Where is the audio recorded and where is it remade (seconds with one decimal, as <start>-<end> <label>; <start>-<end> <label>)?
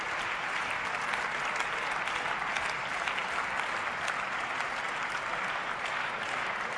0.0-6.8 recorded